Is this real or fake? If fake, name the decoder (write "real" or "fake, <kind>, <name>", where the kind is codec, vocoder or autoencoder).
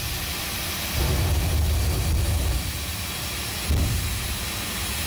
real